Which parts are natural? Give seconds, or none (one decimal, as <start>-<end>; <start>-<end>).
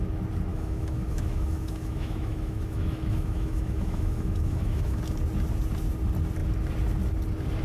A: 0.0-0.5; 5.0-7.6